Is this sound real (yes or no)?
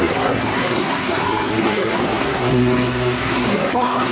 no